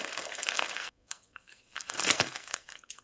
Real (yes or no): no